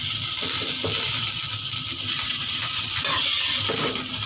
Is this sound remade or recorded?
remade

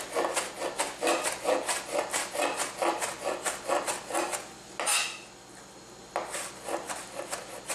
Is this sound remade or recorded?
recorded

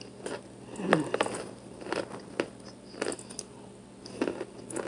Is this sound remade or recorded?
recorded